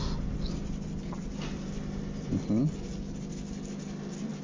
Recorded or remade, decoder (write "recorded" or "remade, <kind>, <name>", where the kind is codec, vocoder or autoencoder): recorded